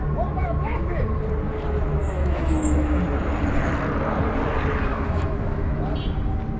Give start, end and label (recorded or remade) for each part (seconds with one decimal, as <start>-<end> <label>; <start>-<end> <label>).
0.0-0.4 recorded; 0.4-1.0 remade; 1.0-2.0 recorded; 2.0-3.0 remade; 3.0-4.9 recorded; 4.9-5.8 remade; 5.8-6.6 recorded